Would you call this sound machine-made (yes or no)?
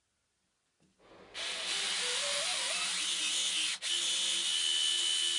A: no